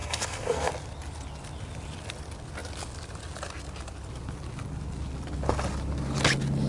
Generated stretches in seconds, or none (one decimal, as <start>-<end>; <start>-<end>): 0.0-0.7